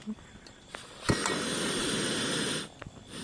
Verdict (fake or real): real